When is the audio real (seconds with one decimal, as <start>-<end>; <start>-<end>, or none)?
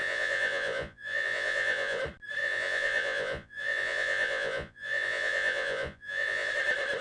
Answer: 2.0-2.4; 6.5-7.0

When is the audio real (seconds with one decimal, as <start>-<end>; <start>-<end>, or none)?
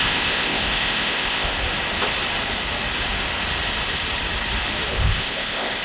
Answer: 1.5-4.9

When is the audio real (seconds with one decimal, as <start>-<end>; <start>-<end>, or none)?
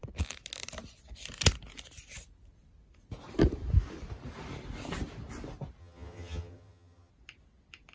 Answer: 0.0-5.8; 7.1-7.9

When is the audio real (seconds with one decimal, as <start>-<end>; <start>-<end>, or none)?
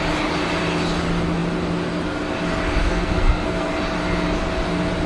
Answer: 0.0-2.8; 3.7-5.1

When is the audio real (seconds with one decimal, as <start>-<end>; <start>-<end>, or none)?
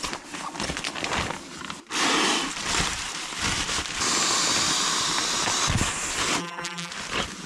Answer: 0.0-6.4; 6.9-7.5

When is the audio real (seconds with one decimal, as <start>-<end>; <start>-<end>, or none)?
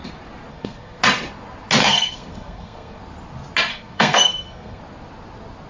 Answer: 0.0-0.5; 1.0-1.8; 3.0-3.7; 4.8-5.7